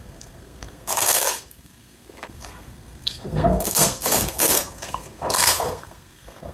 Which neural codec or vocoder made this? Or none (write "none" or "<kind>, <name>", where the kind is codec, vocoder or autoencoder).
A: codec, SNAC